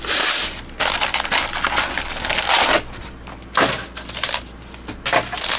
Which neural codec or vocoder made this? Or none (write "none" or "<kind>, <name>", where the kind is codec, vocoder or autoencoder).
none